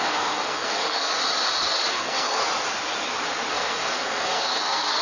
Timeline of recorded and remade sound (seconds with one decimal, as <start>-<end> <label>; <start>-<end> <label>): 0.0-1.2 remade; 1.2-1.9 recorded; 1.9-2.4 remade; 2.4-3.5 recorded; 3.5-5.0 remade